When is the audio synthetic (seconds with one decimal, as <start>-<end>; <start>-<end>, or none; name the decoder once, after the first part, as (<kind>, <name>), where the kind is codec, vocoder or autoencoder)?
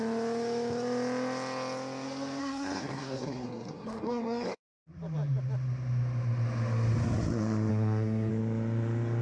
2.4-4.6 (codec, SNAC); 7.7-8.3